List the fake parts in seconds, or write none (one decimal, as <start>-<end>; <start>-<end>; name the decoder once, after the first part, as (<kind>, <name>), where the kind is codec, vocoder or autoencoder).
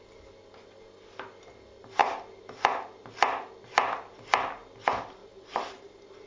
5.2-5.7 (vocoder, BigVGAN v2)